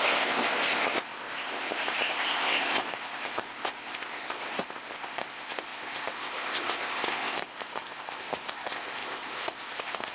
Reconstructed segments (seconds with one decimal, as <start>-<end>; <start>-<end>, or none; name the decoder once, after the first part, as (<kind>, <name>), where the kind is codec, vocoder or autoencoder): 0.0-10.1 (codec, ZipCodec)